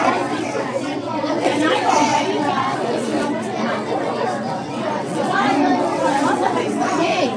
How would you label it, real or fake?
fake